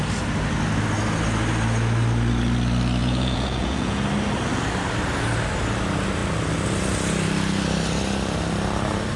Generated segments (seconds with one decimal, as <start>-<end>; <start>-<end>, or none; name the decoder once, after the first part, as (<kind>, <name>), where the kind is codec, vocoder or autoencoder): 3.0-4.0 (vocoder, Vocos)